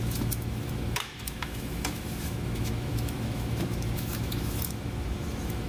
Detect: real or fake fake